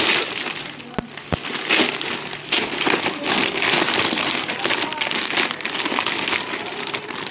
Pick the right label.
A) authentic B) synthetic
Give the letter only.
A